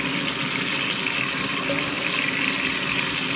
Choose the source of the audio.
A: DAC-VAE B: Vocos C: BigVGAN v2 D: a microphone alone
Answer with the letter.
D